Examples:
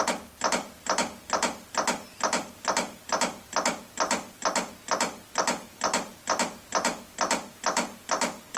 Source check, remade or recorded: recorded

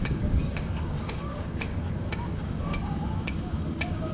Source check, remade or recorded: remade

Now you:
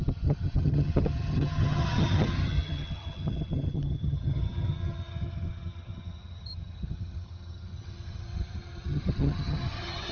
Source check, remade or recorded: remade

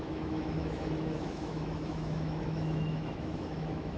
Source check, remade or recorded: remade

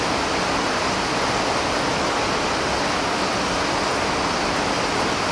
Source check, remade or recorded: recorded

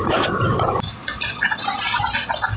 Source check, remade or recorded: recorded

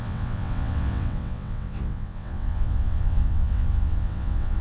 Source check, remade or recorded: remade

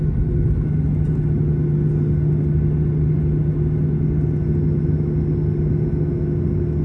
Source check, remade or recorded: recorded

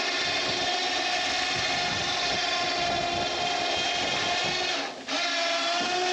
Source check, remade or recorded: recorded